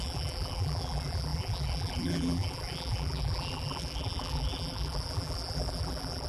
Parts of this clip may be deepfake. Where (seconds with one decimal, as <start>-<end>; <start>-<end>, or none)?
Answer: 0.0-6.3